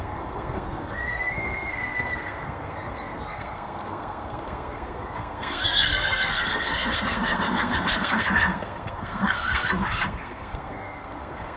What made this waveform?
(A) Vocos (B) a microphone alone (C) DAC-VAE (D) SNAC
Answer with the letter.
D